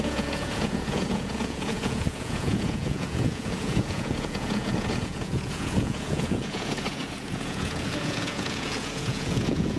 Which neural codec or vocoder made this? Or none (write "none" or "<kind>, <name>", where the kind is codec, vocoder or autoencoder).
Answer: vocoder, Vocos